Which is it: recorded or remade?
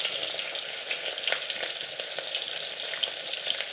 recorded